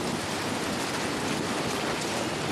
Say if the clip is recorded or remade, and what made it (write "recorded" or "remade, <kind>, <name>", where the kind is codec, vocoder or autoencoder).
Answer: recorded